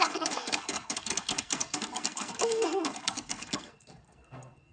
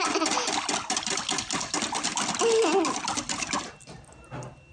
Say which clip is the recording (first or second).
second